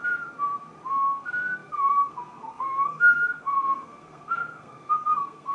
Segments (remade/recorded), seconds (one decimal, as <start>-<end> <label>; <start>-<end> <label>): 0.0-0.9 recorded; 0.9-5.5 remade